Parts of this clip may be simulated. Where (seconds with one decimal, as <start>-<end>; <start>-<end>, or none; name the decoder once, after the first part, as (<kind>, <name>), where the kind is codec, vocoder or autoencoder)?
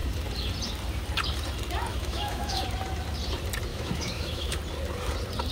1.9-2.6 (autoencoder, DAC-VAE); 3.7-4.6